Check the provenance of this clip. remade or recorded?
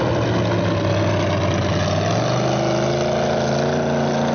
recorded